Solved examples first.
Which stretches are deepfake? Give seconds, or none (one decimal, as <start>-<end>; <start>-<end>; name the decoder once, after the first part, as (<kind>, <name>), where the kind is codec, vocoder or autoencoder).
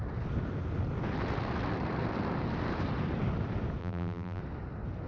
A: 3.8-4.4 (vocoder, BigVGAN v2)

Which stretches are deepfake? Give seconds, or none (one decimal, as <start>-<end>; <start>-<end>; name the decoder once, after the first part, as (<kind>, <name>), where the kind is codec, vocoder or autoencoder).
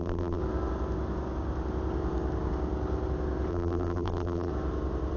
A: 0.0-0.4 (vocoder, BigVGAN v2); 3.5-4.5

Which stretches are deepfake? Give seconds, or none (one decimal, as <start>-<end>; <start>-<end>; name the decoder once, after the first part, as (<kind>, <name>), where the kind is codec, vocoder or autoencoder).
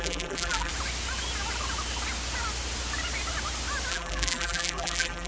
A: 0.0-0.7 (vocoder, BigVGAN v2); 3.9-5.3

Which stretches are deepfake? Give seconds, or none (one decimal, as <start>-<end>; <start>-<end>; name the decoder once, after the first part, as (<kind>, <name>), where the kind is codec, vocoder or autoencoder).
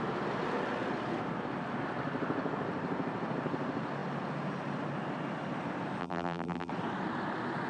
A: 6.0-6.7 (vocoder, BigVGAN v2)